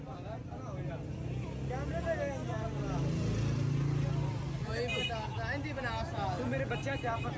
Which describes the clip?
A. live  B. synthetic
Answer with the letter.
A